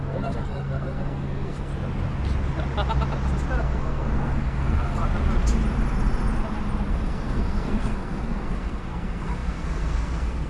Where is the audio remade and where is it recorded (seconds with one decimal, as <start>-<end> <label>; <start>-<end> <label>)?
0.0-1.7 remade; 1.7-3.6 recorded; 3.6-5.0 remade; 5.0-6.9 recorded; 6.9-10.5 remade